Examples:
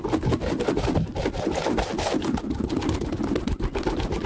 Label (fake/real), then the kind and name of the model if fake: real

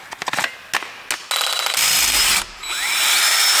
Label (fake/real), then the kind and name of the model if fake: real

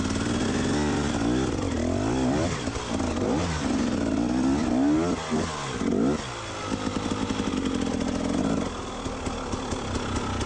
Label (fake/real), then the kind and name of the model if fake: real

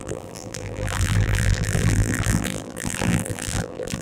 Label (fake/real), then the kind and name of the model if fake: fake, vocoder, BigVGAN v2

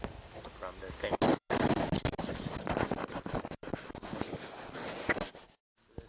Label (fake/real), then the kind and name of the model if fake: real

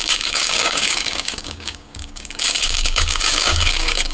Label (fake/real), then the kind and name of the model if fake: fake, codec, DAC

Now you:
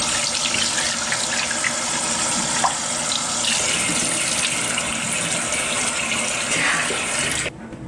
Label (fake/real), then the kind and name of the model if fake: real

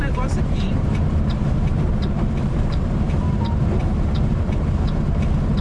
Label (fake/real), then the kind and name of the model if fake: fake, vocoder, BigVGAN v2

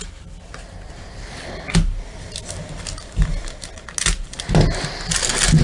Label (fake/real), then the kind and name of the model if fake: real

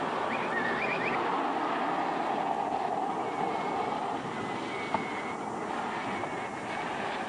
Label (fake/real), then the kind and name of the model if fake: real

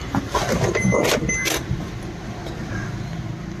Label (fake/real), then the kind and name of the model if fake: real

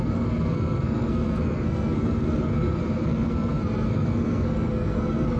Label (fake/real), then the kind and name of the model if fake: fake, codec, SNAC